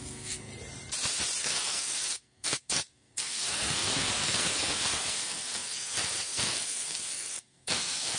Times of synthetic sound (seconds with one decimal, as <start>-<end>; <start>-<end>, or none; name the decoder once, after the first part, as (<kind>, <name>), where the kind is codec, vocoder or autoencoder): 0.0-0.5 (codec, SNAC); 1.4-8.2